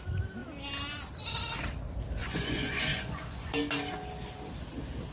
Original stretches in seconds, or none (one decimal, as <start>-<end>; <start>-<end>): 0.0-2.2; 3.5-5.1